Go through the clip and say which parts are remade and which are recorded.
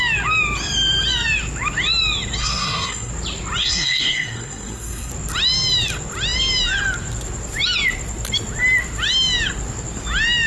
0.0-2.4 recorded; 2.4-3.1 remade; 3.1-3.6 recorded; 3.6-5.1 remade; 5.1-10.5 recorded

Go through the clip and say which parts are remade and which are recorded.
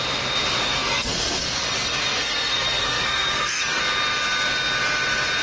0.0-0.6 recorded; 0.6-3.8 remade; 3.8-5.4 recorded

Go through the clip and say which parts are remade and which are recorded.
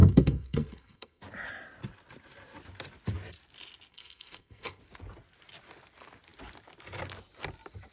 0.0-1.2 remade; 1.2-3.9 recorded; 3.9-4.8 remade; 4.8-7.9 recorded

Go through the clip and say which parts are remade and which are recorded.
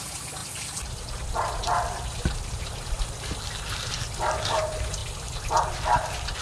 0.0-6.4 recorded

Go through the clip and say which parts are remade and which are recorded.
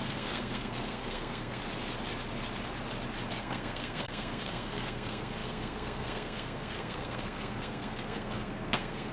0.0-1.6 remade; 1.6-3.3 recorded; 3.3-9.1 remade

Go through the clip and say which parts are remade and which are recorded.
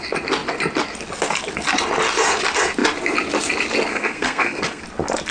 0.0-3.9 recorded; 3.9-4.8 remade; 4.8-5.3 recorded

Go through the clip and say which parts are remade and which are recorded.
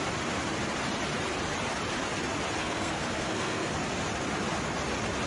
0.0-2.6 recorded; 2.6-3.7 remade; 3.7-5.3 recorded